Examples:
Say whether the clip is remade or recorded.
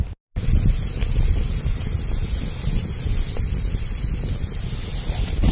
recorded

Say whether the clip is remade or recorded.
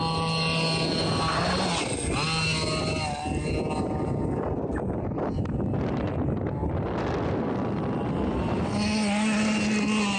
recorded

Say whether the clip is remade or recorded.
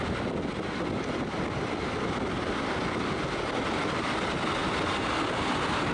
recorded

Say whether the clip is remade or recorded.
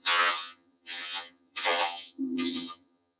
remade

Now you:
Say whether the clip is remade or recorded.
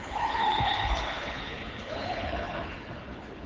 remade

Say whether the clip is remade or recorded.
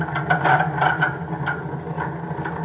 recorded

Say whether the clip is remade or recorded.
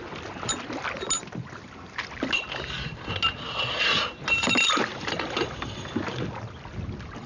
recorded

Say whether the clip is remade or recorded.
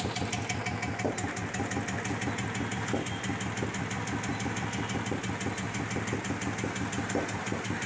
recorded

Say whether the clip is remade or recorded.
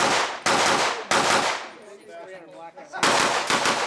recorded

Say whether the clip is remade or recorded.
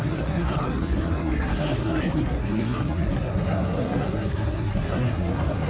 remade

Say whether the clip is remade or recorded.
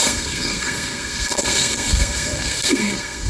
remade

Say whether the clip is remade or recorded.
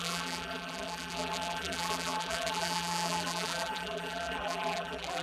remade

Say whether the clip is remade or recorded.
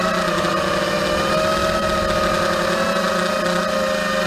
recorded